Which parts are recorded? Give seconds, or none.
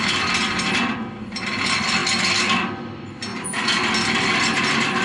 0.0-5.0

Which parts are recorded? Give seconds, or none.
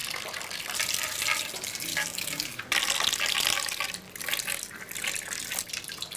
0.0-1.9; 2.6-6.2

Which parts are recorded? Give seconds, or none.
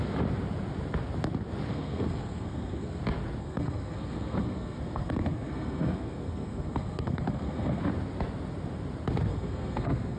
0.0-1.7; 3.0-3.4; 7.8-9.3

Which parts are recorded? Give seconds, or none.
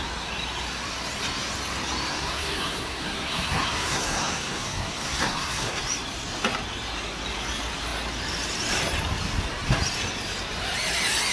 0.0-2.1; 5.8-11.3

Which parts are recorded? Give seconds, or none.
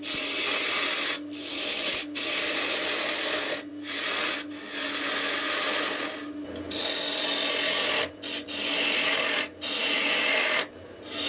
0.0-11.3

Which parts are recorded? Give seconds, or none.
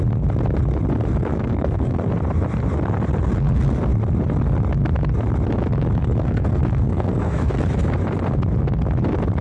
0.0-1.3; 2.1-6.0; 7.5-9.4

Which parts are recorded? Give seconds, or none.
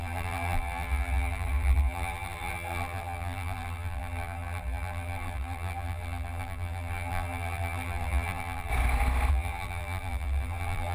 8.7-9.3